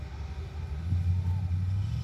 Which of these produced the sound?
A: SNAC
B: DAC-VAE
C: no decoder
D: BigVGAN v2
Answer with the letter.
C